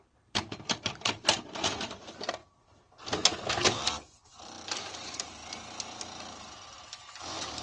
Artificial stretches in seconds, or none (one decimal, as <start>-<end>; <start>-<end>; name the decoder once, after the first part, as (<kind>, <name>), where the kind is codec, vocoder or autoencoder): 0.0-2.4 (vocoder, BigVGAN v2); 3.4-5.4; 7.0-7.6